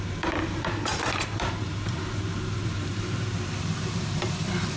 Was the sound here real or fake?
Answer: fake